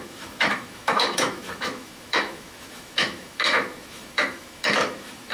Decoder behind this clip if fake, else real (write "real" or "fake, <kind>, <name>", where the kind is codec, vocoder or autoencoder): fake, autoencoder, DAC-VAE